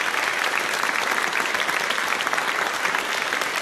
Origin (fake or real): fake